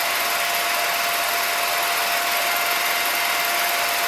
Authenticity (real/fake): real